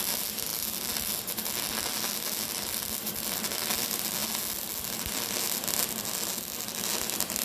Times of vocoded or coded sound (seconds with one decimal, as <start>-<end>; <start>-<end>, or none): none